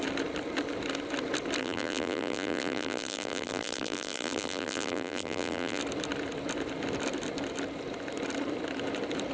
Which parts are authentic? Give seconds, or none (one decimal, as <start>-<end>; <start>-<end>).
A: 0.0-1.6; 5.8-9.3